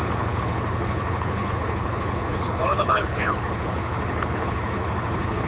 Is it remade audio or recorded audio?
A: remade